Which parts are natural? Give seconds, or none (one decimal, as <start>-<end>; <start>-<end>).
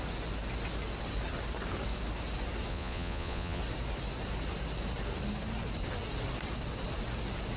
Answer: 0.0-2.7; 3.6-7.6